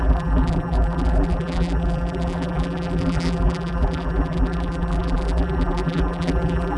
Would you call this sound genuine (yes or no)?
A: no